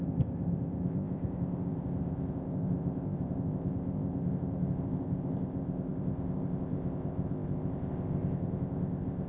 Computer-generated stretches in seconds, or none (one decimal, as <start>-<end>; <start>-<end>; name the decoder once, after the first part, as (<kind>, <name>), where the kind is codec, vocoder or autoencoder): 0.0-9.3 (codec, ZipCodec)